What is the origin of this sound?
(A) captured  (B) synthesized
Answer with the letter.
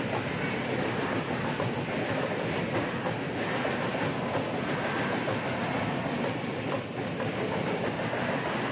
A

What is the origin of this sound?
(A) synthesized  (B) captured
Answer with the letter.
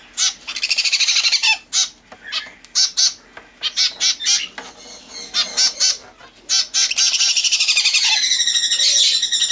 B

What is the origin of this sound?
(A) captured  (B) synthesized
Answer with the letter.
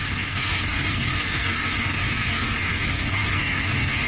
B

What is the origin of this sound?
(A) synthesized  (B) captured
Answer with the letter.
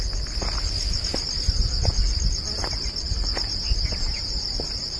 B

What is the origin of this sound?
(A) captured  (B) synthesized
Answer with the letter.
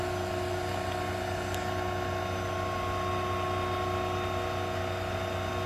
A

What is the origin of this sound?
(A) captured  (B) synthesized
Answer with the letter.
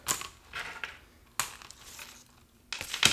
A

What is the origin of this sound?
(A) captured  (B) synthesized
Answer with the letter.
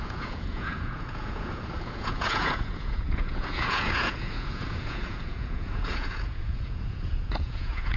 B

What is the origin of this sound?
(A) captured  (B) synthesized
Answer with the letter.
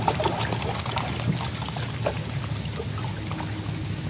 A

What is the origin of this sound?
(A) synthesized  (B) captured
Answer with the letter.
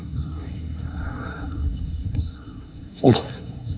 A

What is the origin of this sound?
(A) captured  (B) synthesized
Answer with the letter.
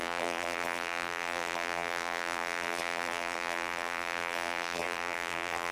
B